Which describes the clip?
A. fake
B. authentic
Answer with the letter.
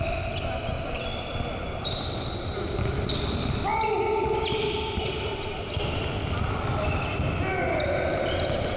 B